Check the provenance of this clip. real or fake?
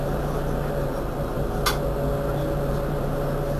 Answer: real